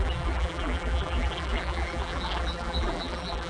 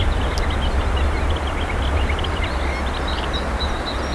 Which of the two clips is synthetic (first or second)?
first